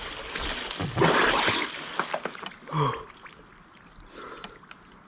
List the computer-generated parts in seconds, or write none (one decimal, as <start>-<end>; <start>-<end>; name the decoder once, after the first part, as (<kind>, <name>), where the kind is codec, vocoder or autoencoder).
none